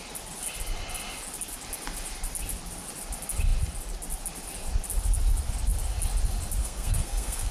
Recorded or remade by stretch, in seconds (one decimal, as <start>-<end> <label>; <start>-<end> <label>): 0.0-6.6 recorded; 6.6-7.5 remade